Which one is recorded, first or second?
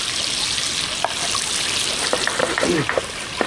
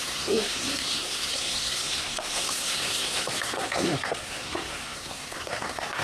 first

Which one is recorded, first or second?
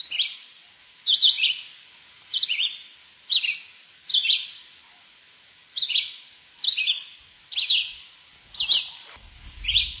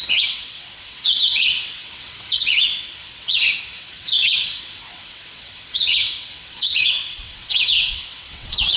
first